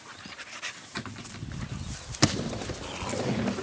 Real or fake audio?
real